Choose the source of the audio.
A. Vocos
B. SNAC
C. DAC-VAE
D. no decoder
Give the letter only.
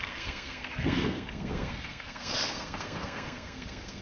B